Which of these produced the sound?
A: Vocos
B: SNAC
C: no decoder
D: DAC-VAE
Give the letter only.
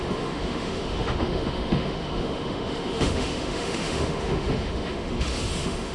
D